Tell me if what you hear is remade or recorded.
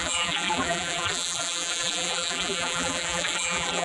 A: remade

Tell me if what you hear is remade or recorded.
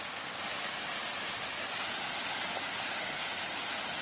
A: recorded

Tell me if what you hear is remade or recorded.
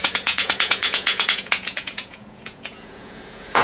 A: remade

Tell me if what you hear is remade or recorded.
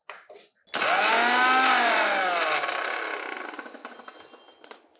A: recorded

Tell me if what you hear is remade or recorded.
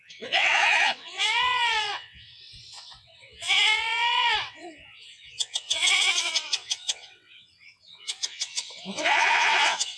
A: remade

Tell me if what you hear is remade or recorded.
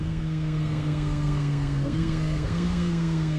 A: remade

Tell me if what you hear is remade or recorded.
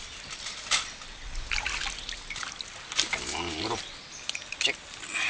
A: recorded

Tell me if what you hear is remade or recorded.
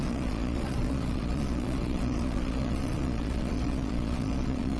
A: remade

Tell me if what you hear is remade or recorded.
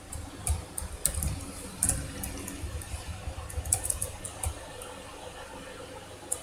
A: recorded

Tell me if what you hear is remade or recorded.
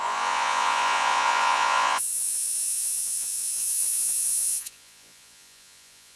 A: remade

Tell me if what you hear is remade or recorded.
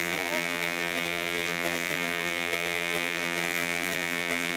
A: remade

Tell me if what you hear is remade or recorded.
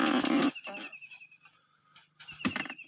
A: recorded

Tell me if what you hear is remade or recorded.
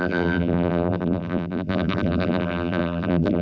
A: remade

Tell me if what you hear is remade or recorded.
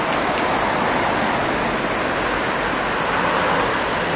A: recorded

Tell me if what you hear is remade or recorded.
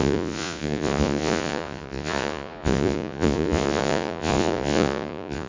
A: remade